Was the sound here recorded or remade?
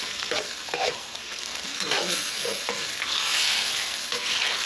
remade